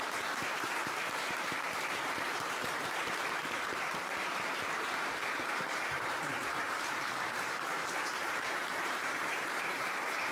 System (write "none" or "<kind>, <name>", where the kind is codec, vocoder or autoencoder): vocoder, BigVGAN v2